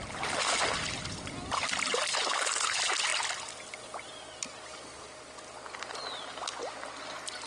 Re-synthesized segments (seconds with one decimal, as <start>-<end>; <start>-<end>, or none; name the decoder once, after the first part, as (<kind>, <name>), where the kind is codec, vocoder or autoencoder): none